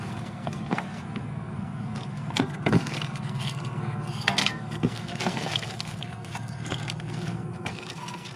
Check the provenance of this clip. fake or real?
fake